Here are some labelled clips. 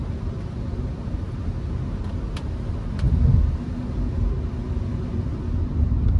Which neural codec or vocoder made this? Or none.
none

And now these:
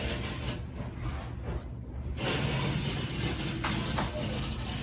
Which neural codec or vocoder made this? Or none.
none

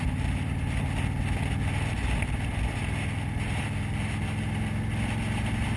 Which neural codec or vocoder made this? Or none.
none